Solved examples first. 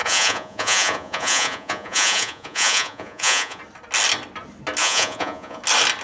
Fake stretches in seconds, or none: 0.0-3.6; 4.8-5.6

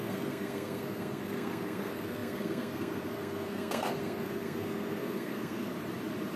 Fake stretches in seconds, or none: 0.0-5.7